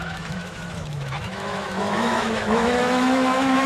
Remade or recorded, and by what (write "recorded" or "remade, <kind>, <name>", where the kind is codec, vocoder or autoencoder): remade, autoencoder, DAC-VAE